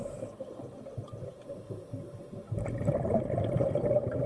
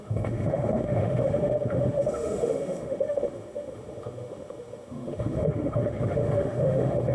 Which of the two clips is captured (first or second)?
first